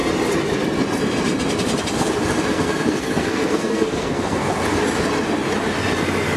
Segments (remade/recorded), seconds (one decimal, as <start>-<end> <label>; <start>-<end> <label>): 0.0-2.5 recorded; 2.5-4.5 remade; 4.5-6.4 recorded